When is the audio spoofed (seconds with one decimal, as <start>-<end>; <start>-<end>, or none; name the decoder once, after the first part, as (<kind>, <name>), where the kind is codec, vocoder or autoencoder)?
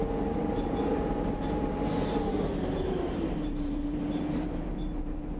0.4-1.1 (vocoder, BigVGAN v2); 2.1-5.4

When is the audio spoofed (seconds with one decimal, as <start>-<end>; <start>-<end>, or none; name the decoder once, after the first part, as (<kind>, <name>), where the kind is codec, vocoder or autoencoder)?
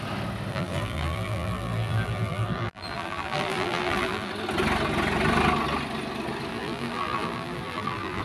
0.5-4.3 (vocoder, BigVGAN v2); 6.5-8.2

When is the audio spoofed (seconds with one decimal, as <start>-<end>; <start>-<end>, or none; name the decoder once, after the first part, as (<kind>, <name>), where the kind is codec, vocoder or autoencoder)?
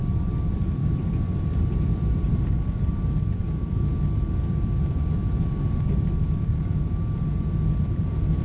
0.8-2.9 (vocoder, BigVGAN v2)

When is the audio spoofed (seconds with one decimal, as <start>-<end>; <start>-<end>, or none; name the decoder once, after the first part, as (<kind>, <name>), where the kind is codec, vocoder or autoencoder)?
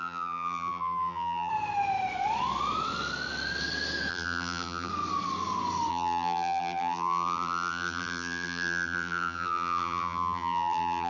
0.0-1.5 (vocoder, BigVGAN v2); 4.1-4.9; 5.9-11.1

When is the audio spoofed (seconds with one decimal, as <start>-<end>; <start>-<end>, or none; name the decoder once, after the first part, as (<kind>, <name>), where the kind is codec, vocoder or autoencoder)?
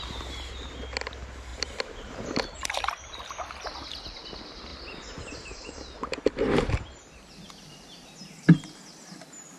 1.5-2.6 (vocoder, BigVGAN v2)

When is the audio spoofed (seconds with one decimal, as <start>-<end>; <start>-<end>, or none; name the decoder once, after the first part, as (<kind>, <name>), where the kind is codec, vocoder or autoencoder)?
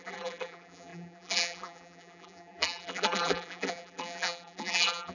0.0-5.1 (vocoder, BigVGAN v2)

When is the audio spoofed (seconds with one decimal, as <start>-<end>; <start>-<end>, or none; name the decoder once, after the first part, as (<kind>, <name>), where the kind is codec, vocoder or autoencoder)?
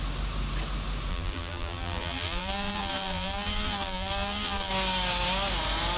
1.1-4.7 (vocoder, BigVGAN v2)